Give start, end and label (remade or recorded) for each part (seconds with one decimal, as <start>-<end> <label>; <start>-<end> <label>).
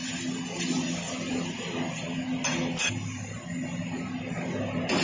0.0-5.0 recorded